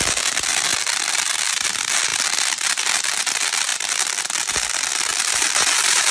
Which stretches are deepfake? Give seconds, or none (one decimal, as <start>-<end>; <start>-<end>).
0.7-1.3; 2.1-3.3; 3.7-4.3; 5.1-6.1